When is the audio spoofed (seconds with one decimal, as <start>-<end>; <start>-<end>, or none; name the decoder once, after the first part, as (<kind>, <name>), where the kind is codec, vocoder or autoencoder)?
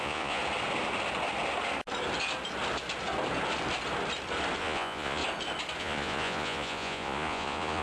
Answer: 0.0-0.4 (vocoder, Vocos); 4.6-5.2; 5.8-7.8